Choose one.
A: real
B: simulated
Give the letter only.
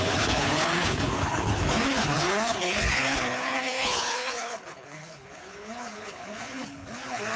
B